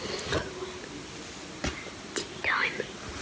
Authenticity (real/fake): real